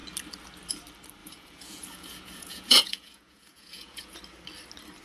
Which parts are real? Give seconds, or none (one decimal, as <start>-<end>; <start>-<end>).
0.0-1.2; 4.2-5.0